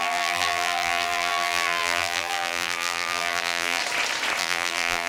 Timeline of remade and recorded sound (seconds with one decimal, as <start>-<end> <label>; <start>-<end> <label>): 0.0-3.8 remade; 3.8-4.4 recorded; 4.4-5.1 remade